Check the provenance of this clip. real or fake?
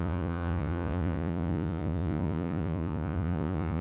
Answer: fake